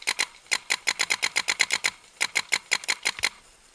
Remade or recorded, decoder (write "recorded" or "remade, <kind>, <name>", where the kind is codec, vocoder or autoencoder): recorded